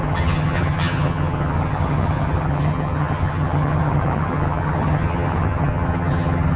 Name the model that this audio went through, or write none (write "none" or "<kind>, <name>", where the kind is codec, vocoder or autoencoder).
vocoder, HiFi-GAN